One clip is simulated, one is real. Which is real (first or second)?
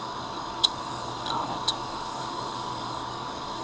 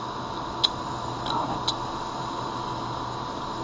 second